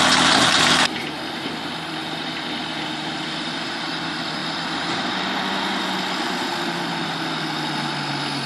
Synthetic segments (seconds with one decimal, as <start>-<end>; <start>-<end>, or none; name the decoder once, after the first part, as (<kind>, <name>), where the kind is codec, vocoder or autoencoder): none